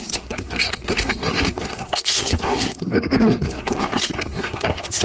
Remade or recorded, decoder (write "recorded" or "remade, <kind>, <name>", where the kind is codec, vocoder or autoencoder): remade, codec, SNAC